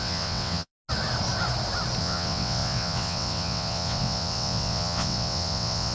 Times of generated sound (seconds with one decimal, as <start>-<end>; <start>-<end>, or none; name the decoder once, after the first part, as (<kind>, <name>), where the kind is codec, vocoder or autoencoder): 0.0-0.7 (vocoder, WaveNeXt); 2.0-5.9